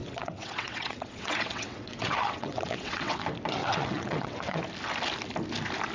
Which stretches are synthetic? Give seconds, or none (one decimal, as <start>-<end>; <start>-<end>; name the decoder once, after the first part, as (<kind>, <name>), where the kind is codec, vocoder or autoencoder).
0.0-3.2 (vocoder, WaveNeXt); 3.6-4.6